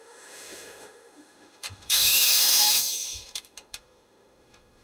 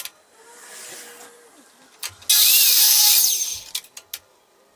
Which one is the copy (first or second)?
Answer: first